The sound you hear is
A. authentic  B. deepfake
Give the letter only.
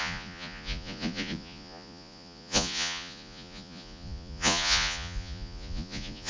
B